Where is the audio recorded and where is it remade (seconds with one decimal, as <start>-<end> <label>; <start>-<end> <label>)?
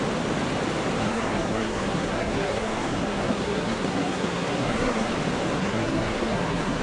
0.0-1.0 recorded; 1.0-5.1 remade; 5.1-5.6 recorded; 5.6-6.8 remade